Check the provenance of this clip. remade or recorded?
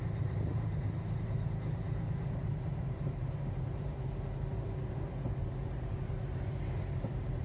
remade